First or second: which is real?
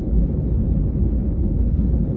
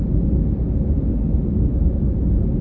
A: second